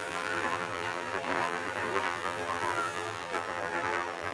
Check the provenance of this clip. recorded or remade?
remade